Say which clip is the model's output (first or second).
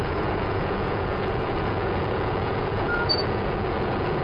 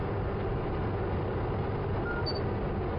first